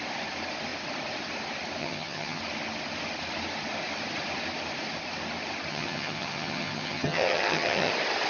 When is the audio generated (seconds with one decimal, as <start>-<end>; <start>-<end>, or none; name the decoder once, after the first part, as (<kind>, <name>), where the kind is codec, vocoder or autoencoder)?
1.8-2.4 (vocoder, HiFi-GAN); 5.7-7.9